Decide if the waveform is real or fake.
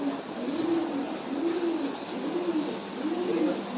real